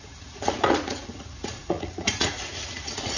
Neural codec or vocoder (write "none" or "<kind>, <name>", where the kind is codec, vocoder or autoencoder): vocoder, Vocos